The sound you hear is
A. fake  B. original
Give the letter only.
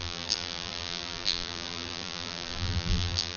A